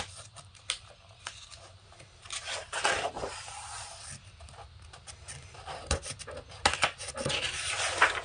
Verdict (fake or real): real